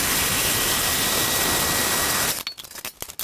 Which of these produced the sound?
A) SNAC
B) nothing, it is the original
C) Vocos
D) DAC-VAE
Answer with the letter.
B